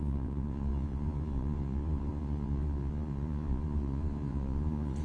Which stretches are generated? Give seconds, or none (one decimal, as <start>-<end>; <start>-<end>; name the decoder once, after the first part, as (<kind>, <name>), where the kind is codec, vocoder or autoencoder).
0.0-5.0 (vocoder, Vocos)